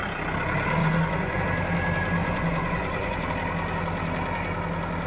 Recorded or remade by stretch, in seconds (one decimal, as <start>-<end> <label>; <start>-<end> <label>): 0.0-0.8 recorded; 0.8-1.4 remade; 1.4-2.2 recorded; 2.2-3.3 remade; 3.3-5.1 recorded